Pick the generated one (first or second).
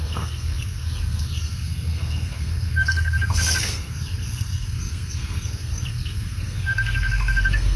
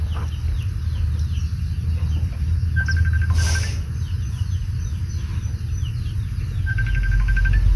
first